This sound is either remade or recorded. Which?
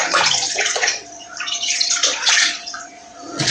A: remade